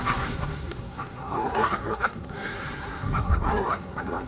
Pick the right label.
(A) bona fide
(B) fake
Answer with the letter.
B